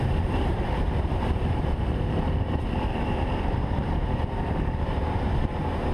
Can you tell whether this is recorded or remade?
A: remade